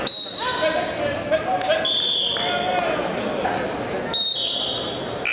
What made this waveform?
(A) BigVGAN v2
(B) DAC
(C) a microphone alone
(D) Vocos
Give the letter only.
C